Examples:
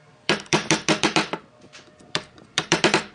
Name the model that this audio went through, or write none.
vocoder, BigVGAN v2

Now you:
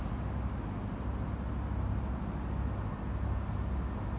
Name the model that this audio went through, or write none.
none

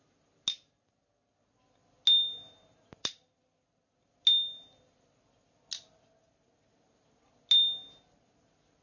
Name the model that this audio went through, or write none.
none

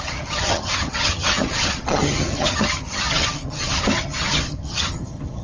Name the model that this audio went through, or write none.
vocoder, HiFi-GAN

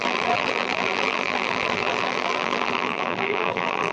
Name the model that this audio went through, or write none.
vocoder, BigVGAN v2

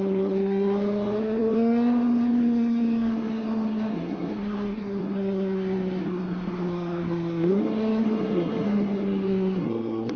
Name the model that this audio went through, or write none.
codec, SNAC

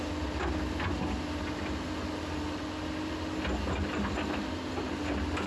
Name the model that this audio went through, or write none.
none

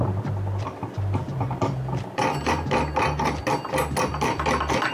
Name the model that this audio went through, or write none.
none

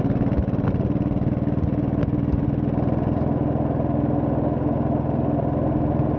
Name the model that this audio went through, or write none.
none